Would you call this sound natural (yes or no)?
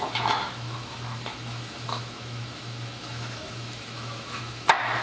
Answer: no